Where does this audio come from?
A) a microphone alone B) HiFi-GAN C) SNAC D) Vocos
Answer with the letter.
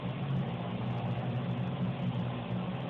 A